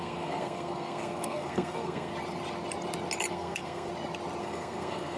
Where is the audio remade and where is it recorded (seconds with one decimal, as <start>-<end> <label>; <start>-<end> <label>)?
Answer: 0.0-2.1 remade; 2.1-3.3 recorded; 3.3-3.9 remade; 3.9-4.4 recorded; 4.4-5.2 remade